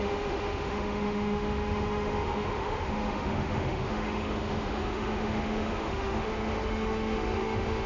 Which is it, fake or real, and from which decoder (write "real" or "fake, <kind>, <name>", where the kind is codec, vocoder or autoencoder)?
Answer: fake, autoencoder, DAC-VAE